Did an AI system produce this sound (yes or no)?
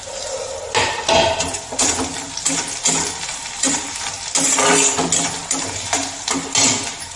no